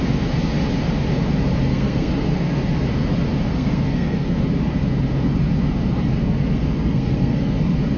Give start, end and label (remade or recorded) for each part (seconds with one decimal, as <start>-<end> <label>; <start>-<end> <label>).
0.0-1.7 recorded; 1.7-2.6 remade; 2.6-3.5 recorded; 3.5-4.3 remade; 4.3-6.1 recorded; 6.1-7.6 remade; 7.6-8.0 recorded